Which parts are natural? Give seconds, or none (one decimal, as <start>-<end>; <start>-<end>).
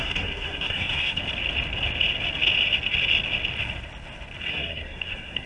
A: 1.2-4.5